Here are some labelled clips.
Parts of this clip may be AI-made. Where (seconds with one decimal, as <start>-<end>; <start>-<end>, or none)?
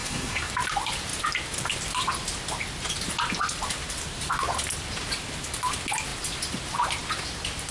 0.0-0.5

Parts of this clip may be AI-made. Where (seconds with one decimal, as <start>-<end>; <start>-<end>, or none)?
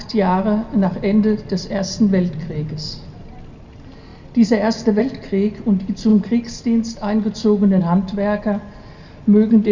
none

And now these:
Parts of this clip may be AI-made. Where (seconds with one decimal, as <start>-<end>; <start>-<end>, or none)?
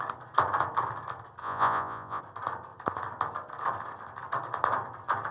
1.4-2.2